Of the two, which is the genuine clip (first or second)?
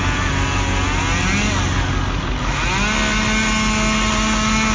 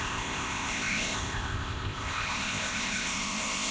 first